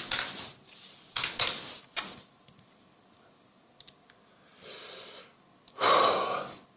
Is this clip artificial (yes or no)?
no